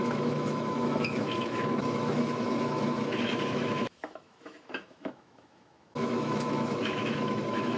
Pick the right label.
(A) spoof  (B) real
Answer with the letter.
A